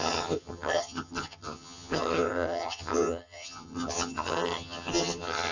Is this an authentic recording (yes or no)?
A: no